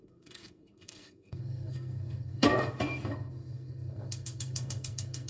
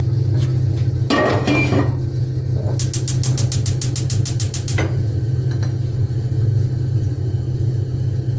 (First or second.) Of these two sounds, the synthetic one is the first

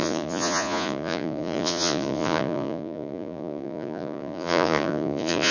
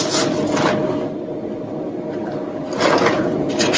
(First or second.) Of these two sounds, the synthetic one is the first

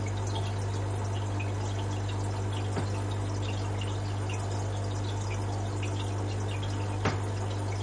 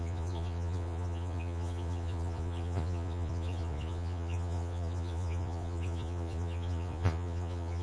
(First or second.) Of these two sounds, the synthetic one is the second